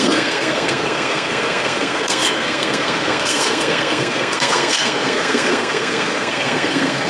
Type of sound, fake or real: fake